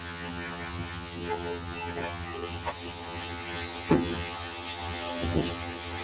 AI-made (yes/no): yes